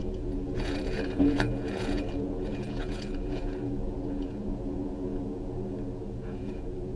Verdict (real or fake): fake